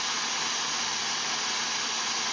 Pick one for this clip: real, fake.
real